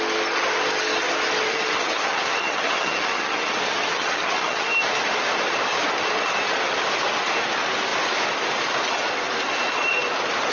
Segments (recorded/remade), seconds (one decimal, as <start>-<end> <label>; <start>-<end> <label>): 0.0-1.5 recorded; 1.5-3.5 remade; 3.5-3.9 recorded; 3.9-4.7 remade; 4.7-10.5 recorded